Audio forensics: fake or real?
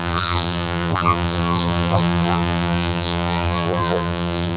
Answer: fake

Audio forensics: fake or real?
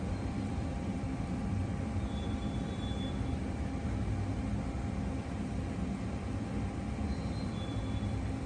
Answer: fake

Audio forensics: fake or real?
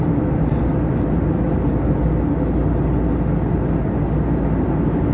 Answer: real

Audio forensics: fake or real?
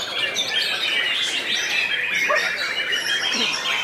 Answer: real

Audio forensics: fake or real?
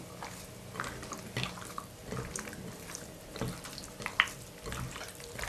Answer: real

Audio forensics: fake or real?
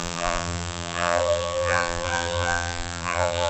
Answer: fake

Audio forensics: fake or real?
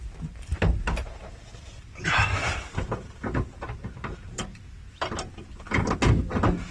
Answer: real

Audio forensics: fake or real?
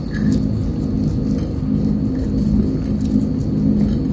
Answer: real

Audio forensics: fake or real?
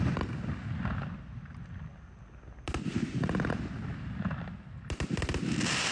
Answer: real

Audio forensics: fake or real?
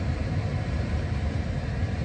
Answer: fake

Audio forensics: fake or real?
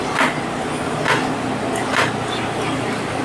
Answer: real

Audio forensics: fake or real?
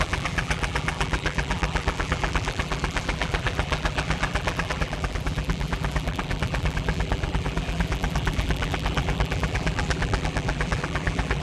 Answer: fake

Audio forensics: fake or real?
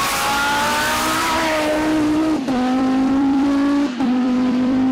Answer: fake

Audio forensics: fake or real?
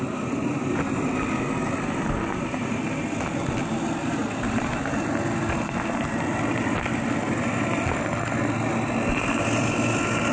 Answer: real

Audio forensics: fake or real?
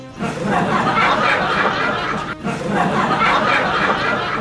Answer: real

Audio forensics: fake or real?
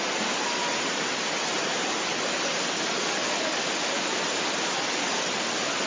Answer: real